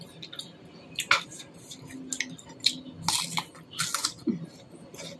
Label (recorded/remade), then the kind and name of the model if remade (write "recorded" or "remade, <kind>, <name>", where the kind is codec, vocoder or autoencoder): recorded